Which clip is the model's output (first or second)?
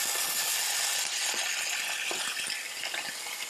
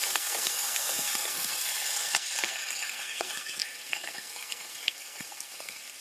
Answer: second